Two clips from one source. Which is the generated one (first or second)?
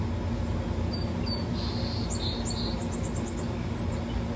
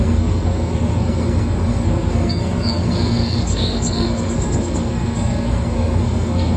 second